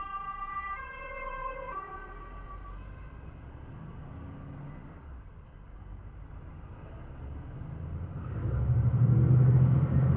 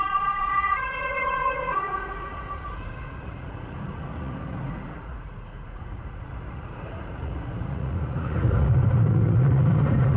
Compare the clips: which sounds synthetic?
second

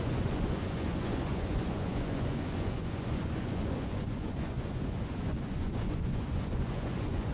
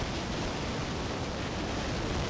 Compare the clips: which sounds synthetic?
first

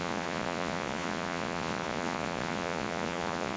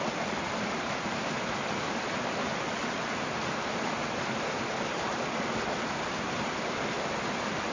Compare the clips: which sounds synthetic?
first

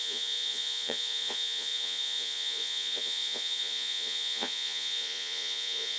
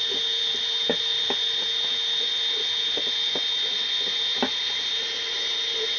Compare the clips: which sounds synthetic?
first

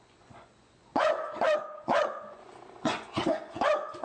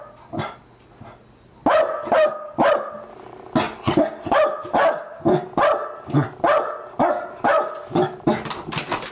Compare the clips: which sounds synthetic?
first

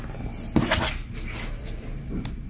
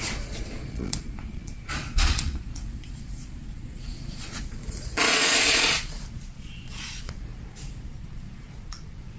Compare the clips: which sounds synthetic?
second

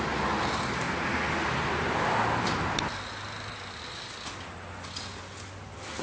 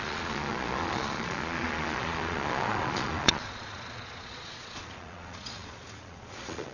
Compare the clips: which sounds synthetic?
second